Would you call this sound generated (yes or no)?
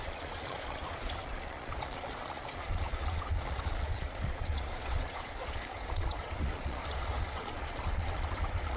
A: yes